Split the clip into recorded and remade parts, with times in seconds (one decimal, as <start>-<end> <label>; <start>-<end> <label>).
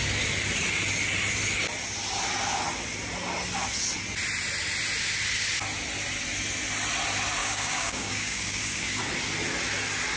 0.0-7.4 recorded; 7.4-9.0 remade; 9.0-10.2 recorded